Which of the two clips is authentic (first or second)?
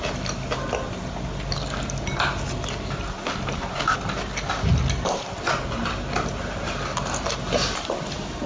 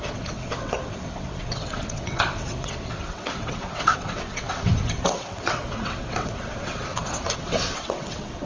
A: first